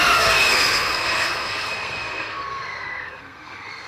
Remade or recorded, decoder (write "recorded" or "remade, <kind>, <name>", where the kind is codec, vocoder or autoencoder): remade, codec, SNAC